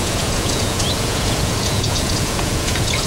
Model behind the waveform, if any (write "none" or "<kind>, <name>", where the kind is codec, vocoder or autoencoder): vocoder, Vocos